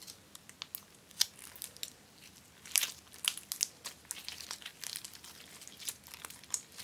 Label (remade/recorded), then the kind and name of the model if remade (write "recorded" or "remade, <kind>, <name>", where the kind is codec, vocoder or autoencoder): recorded